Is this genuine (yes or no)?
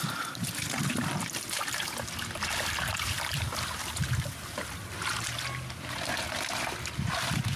yes